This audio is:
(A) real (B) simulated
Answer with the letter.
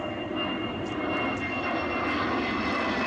A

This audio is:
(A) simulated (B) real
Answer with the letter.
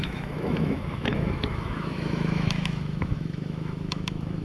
A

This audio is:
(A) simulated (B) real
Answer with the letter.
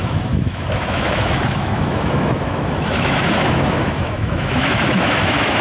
A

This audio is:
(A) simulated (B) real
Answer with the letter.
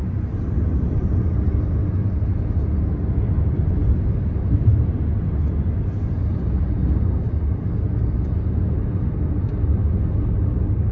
B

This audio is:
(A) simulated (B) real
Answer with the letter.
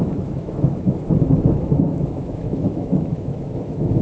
A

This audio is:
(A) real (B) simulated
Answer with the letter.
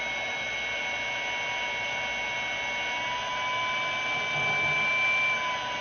A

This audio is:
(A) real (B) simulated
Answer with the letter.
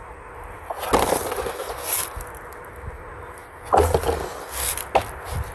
A